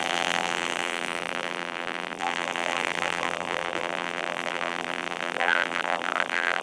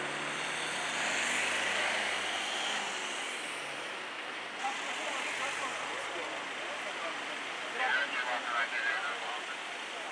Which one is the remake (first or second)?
first